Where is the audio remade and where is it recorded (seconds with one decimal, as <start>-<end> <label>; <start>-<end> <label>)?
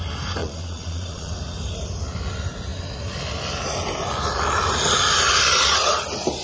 0.0-0.4 recorded; 0.4-1.3 remade; 1.3-6.4 recorded